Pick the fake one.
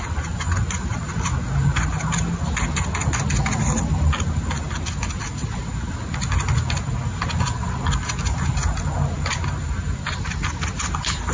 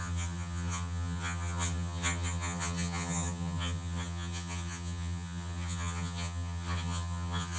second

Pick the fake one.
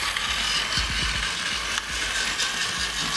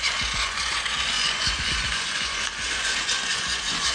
second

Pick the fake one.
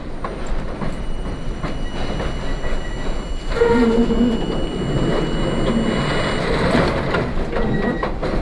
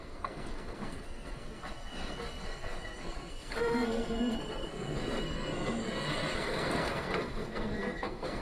second